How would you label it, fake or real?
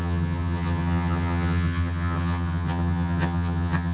fake